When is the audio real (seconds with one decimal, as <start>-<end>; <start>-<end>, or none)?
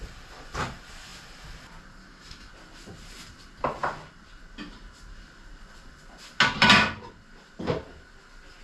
0.0-2.0; 2.5-8.6